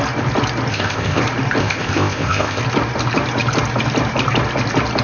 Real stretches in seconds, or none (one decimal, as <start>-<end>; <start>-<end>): 0.0-0.7; 1.2-1.6; 2.6-5.0